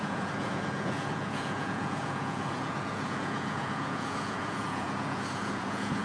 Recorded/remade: remade